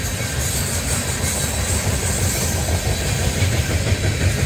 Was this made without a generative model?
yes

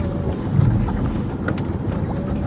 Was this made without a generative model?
yes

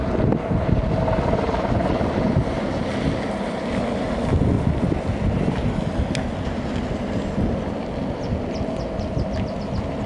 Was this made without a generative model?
yes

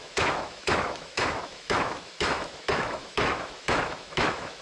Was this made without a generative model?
no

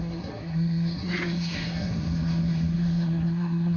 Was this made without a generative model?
no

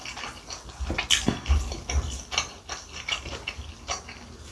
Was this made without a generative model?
yes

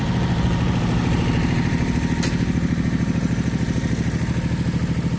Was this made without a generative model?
no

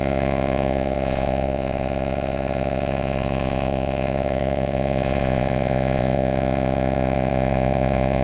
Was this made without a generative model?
no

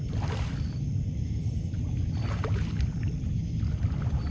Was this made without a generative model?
yes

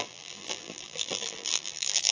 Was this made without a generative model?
no